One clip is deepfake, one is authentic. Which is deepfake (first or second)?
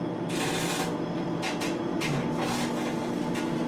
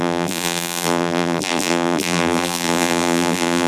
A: second